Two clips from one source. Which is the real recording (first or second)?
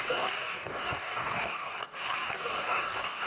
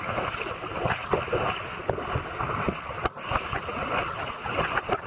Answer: second